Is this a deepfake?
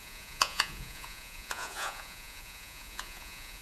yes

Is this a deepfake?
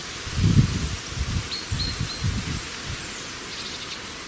no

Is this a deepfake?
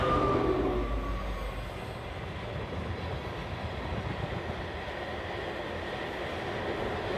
no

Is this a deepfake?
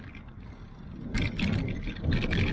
no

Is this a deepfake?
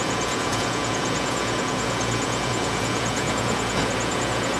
yes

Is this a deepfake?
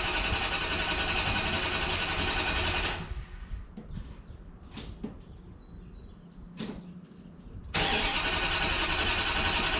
no